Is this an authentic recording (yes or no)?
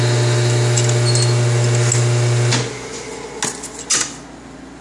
yes